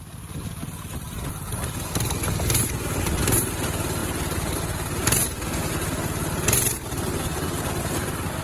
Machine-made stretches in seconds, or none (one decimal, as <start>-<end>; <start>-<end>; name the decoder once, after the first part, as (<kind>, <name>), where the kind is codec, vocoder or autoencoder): none